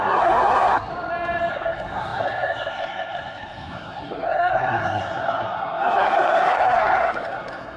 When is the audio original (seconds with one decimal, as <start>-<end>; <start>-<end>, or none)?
0.9-1.5